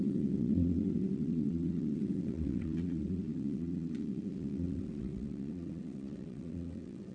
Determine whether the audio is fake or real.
fake